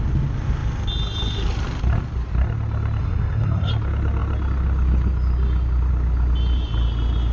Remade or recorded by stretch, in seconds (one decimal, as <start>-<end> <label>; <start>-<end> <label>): 0.0-3.0 recorded; 3.0-3.7 remade; 3.7-7.3 recorded